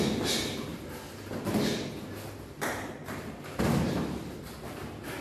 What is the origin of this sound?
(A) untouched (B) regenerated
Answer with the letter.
A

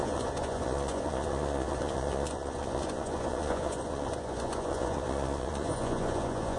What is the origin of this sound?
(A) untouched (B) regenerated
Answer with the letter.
B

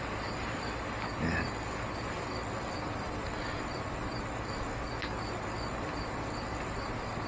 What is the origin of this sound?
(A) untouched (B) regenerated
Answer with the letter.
A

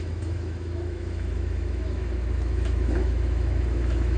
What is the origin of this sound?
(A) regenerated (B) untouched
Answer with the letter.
A